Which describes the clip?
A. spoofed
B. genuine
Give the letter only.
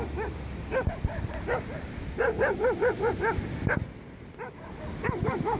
B